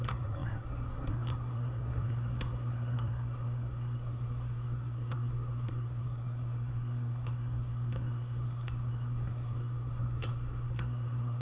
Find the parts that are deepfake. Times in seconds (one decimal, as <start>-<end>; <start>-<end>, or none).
0.0-11.4